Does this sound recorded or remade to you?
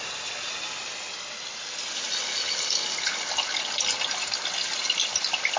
recorded